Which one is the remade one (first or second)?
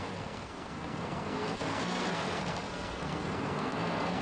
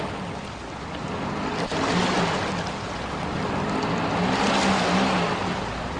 first